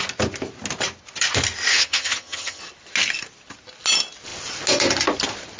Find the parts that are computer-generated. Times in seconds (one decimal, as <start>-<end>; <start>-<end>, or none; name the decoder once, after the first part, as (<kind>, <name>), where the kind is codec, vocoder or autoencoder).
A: 1.7-2.6 (vocoder, HiFi-GAN)